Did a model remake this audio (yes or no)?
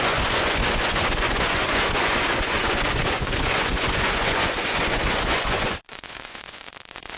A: yes